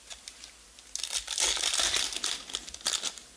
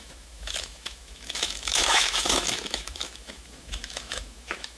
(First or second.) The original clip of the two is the first